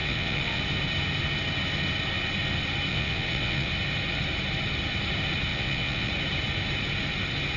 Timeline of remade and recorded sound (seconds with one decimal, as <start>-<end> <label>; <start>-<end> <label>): 0.0-0.6 remade; 0.6-2.9 recorded; 2.9-3.7 remade; 3.7-5.5 recorded; 5.5-6.1 remade; 6.1-7.6 recorded